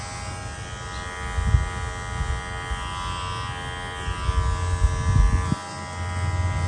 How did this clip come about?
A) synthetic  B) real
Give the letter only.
B